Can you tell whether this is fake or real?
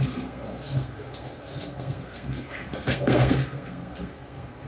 fake